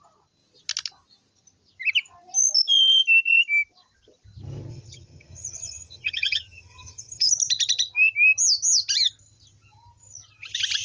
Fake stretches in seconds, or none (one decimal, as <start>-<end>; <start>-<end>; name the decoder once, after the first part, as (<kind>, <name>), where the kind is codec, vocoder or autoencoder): 4.7-7.3 (vocoder, HiFi-GAN)